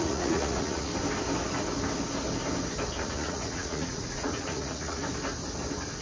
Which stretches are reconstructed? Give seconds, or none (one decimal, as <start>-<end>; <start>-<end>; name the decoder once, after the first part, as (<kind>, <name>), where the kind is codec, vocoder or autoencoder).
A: 0.0-0.9 (vocoder, Vocos); 3.0-5.0